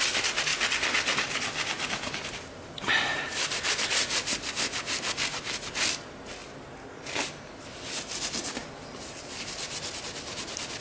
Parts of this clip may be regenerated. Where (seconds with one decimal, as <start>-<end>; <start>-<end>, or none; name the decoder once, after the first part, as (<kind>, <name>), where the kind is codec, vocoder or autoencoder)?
none